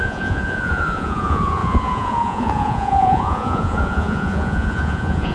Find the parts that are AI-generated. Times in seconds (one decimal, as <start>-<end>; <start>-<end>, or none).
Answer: 0.0-5.3